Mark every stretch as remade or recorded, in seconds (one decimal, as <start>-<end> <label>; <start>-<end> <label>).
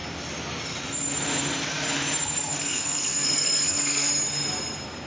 0.0-2.5 recorded; 2.5-4.1 remade; 4.1-5.1 recorded